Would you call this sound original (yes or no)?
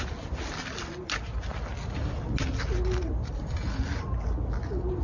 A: yes